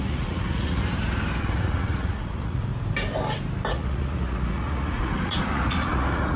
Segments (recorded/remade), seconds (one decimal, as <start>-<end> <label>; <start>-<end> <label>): 0.0-0.8 remade; 0.8-1.4 recorded; 1.4-2.7 remade; 2.7-3.7 recorded; 3.7-6.4 remade